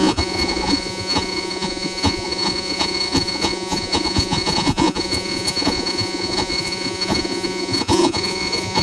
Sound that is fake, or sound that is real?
fake